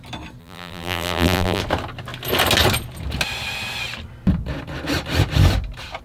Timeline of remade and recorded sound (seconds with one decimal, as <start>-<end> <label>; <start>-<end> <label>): 0.0-0.4 recorded; 0.4-1.6 remade; 1.6-6.0 recorded